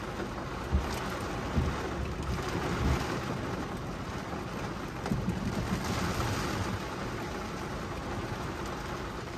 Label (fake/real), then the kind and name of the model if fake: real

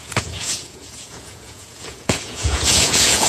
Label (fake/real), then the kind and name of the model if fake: fake, vocoder, Vocos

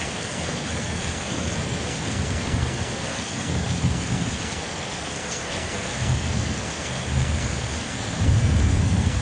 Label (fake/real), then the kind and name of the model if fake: fake, codec, SNAC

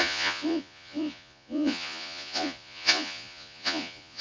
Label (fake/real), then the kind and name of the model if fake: fake, vocoder, Vocos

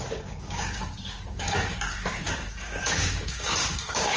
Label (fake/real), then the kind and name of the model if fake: fake, codec, DAC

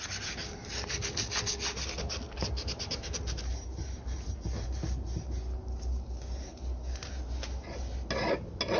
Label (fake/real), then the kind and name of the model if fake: real